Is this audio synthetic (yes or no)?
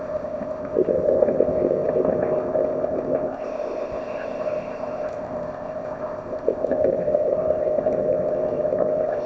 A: yes